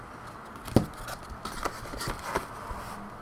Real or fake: real